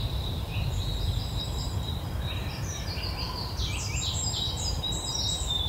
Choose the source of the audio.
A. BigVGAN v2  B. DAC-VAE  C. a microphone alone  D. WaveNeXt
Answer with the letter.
A